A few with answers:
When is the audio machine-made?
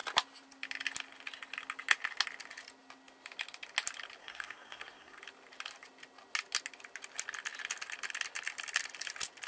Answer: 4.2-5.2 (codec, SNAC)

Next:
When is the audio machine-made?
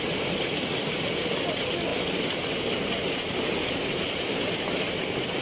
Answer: none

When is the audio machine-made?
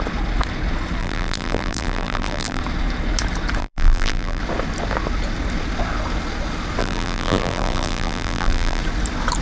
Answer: 1.0-2.6 (vocoder, BigVGAN v2); 3.6-4.4; 6.8-8.8